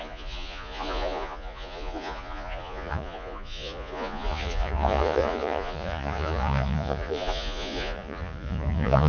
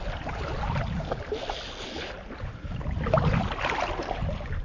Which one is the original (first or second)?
second